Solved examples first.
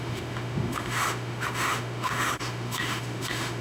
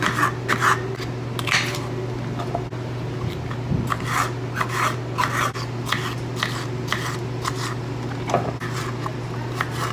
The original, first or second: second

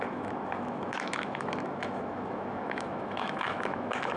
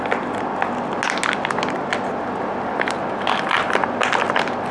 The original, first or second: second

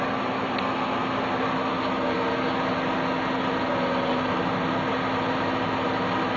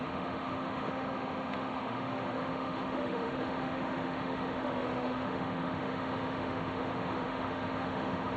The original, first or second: first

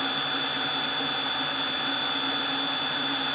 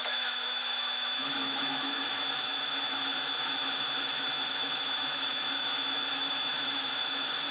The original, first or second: first